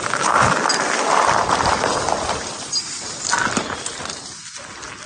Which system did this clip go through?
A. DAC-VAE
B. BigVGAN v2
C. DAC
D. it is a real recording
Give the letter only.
D